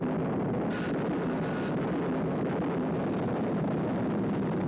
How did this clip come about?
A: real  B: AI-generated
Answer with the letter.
A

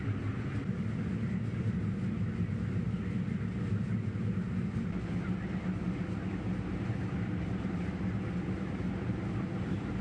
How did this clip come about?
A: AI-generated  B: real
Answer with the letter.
B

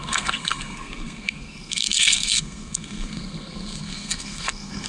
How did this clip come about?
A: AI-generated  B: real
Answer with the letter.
A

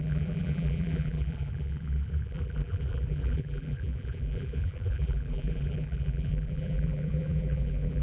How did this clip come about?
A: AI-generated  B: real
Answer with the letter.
A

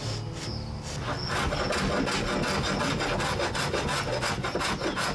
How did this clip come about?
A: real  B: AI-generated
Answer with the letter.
A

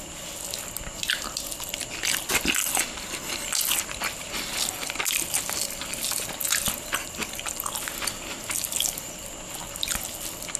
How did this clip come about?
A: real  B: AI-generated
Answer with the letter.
A